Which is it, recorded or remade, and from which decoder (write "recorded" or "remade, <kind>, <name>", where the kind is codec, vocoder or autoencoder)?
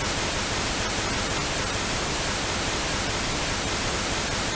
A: recorded